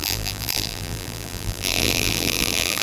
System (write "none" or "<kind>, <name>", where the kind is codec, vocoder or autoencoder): vocoder, BigVGAN v2